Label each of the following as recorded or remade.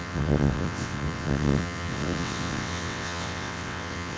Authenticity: remade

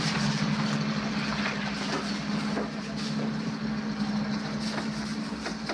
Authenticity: recorded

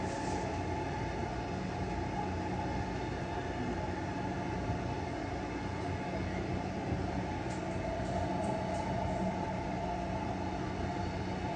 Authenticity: recorded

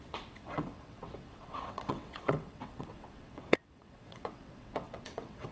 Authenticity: remade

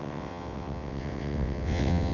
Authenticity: remade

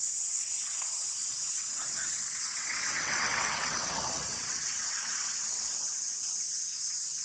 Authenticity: remade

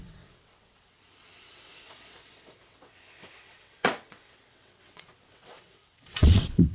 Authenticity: remade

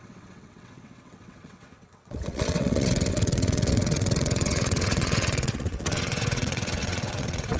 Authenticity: remade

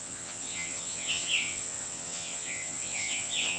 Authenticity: remade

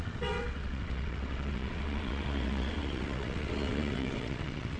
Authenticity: remade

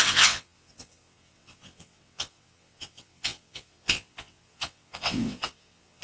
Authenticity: remade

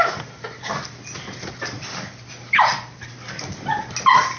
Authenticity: recorded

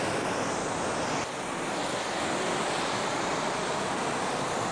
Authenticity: recorded